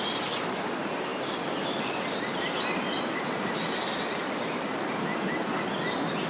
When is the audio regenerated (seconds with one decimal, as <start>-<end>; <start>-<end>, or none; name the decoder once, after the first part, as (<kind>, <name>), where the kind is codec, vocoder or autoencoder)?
none